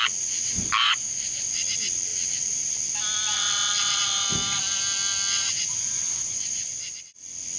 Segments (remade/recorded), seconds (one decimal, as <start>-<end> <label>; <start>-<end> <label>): 0.0-0.8 recorded; 0.8-1.5 remade; 1.5-5.4 recorded; 5.4-7.0 remade; 7.0-7.6 recorded